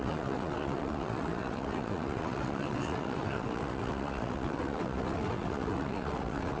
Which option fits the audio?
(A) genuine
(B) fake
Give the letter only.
B